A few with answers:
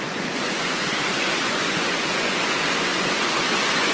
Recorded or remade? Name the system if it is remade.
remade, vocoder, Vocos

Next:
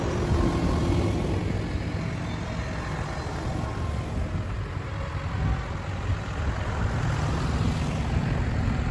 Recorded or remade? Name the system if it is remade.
recorded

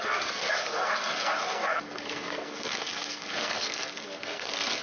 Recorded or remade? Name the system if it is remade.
remade, codec, SNAC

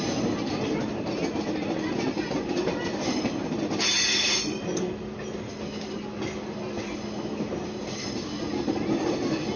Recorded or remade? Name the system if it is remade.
recorded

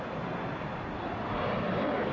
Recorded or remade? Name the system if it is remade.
recorded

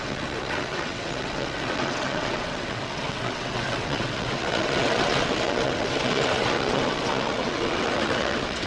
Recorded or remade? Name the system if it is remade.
remade, vocoder, WaveNeXt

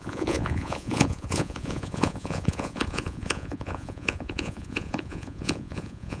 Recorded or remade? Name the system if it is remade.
remade, vocoder, Vocos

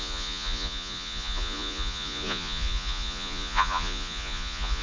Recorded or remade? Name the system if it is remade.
remade, vocoder, Vocos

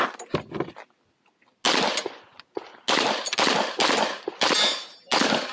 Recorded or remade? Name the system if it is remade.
recorded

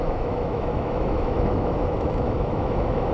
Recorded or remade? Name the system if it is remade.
remade, autoencoder, DAC-VAE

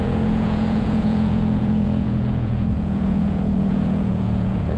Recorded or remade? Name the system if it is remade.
remade, vocoder, Vocos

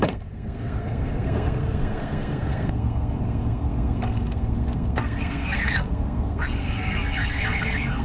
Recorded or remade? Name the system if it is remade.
remade, codec, SNAC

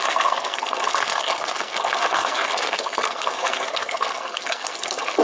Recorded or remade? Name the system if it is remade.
remade, codec, SNAC